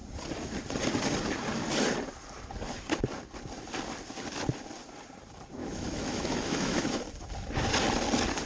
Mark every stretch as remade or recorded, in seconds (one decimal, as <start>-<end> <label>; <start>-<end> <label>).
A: 0.0-5.6 recorded; 5.6-7.0 remade; 7.0-8.5 recorded

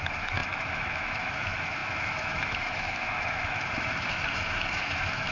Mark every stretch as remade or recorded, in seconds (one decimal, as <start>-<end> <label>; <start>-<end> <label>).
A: 0.0-5.3 remade

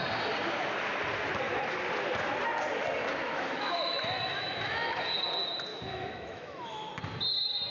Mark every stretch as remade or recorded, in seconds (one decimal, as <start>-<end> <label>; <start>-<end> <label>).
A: 0.0-3.2 recorded; 3.2-5.0 remade; 5.0-5.7 recorded; 5.7-6.9 remade; 6.9-7.7 recorded

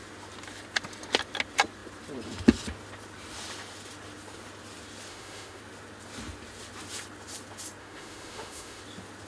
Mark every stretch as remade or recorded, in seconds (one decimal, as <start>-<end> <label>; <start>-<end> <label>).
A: 0.0-5.1 recorded; 5.1-5.6 remade; 5.6-7.8 recorded; 7.8-8.8 remade; 8.8-9.3 recorded